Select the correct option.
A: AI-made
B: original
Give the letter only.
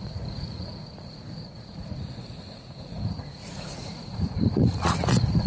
A